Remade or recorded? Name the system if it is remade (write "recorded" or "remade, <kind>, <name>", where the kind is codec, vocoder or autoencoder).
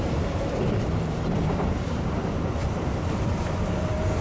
remade, vocoder, BigVGAN v2